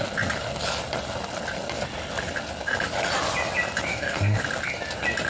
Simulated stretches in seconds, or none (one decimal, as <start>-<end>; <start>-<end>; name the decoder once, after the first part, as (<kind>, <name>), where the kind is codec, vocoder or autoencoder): 3.9-4.4 (codec, SNAC)